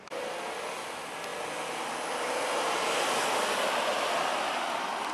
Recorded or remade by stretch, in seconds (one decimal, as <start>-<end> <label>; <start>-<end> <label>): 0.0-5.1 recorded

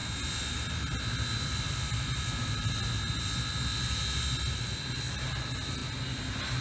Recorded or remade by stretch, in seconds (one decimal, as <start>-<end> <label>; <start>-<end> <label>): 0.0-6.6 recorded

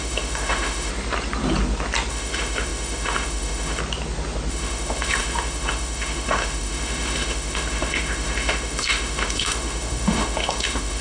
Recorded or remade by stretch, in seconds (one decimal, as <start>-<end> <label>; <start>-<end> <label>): 0.0-0.9 remade; 0.9-2.1 recorded; 2.1-3.8 remade; 3.8-4.5 recorded; 4.5-11.0 remade